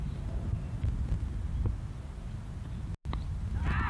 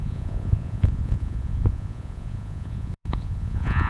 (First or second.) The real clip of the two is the first